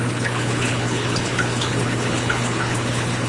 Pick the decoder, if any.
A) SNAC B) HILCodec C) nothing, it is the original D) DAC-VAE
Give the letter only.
B